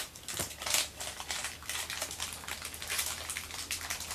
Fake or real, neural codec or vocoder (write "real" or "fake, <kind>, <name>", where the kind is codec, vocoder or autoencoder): real